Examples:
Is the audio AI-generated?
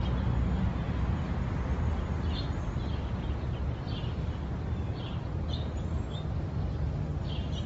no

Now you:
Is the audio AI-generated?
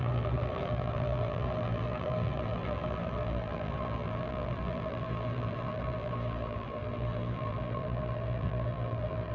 yes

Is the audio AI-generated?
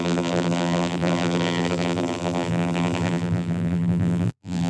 yes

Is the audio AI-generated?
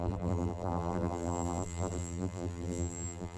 yes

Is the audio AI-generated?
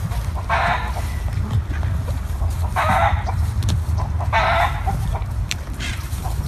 yes